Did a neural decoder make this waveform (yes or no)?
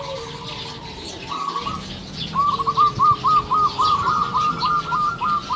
no